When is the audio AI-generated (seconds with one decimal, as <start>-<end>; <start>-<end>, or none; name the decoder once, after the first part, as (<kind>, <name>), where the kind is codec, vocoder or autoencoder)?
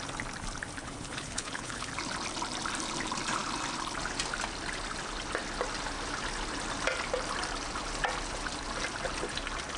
0.8-1.9 (codec, HILCodec)